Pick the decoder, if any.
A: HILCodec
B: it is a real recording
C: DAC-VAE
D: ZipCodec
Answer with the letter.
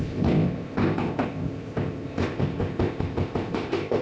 D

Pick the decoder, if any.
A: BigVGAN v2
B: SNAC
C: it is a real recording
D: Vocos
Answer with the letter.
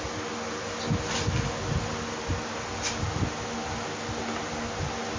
C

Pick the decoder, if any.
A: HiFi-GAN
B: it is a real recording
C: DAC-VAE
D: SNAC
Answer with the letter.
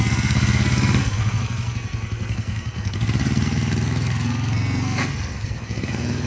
D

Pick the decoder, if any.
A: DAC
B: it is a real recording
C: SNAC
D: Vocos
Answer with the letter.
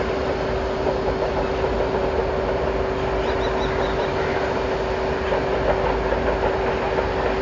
B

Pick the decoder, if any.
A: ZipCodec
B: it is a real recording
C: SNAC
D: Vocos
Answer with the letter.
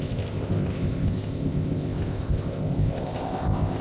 A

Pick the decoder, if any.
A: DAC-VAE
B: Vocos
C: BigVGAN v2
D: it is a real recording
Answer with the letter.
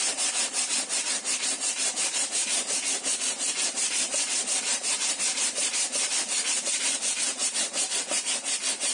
C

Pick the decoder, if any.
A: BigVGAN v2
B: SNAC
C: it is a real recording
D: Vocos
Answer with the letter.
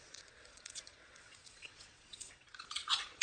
D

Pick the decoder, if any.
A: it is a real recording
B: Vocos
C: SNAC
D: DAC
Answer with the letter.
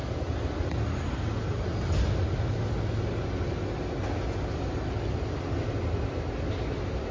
A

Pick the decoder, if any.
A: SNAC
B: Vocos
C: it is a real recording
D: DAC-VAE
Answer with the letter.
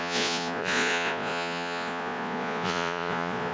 B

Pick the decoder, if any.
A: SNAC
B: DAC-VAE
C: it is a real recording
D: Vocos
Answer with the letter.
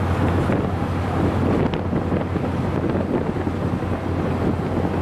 C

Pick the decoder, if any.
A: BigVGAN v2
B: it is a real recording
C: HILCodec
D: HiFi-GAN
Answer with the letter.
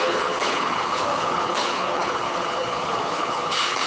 C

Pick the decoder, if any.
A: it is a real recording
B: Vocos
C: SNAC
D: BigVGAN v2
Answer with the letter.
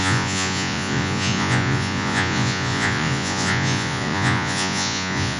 B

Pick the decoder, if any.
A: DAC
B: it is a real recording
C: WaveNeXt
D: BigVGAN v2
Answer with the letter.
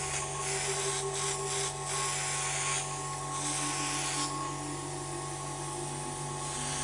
B